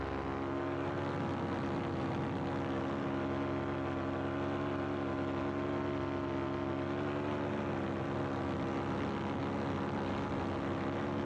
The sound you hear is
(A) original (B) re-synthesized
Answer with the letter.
A